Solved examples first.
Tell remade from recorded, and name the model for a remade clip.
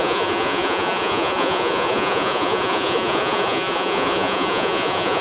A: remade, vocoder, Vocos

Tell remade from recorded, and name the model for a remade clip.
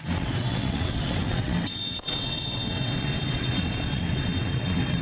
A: remade, vocoder, WaveNeXt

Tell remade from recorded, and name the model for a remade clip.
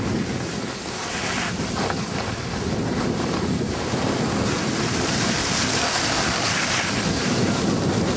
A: recorded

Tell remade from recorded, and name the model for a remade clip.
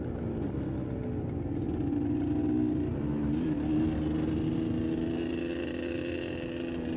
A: recorded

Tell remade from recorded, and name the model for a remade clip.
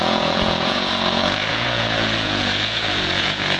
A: remade, vocoder, Vocos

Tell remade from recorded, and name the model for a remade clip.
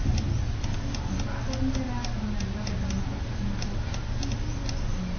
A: recorded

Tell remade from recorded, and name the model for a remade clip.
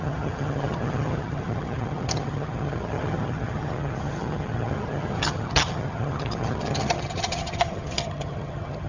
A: remade, vocoder, HiFi-GAN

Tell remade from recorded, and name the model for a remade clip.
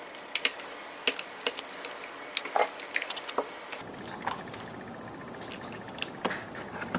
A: recorded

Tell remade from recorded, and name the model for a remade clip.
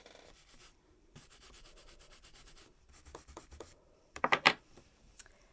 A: remade, vocoder, BigVGAN v2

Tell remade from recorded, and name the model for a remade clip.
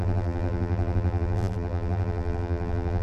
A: remade, vocoder, BigVGAN v2